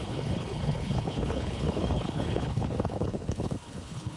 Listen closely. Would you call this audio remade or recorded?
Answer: remade